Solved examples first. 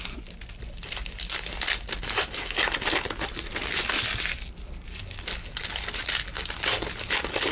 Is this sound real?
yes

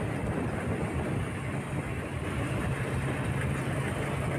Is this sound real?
yes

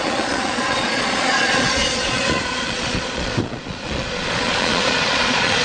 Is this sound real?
no